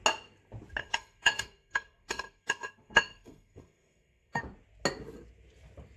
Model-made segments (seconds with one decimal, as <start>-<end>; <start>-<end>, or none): 0.8-4.4